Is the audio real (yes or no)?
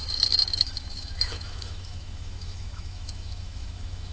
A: no